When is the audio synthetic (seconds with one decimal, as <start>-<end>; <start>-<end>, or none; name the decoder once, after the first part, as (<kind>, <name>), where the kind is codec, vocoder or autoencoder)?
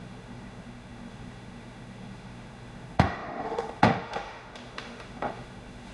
0.0-5.9 (autoencoder, DAC-VAE)